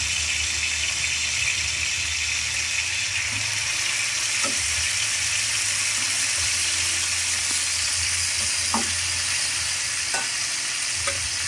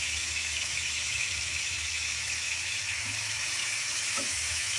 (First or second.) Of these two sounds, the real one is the first